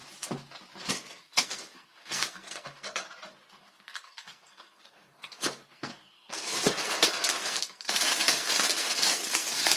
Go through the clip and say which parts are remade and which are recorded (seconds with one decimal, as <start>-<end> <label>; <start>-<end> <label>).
0.0-0.9 recorded; 0.9-3.0 remade; 3.0-3.5 recorded; 3.5-9.8 remade